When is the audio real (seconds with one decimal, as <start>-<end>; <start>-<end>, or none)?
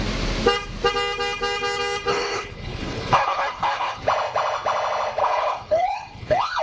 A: 0.0-2.1; 4.0-5.2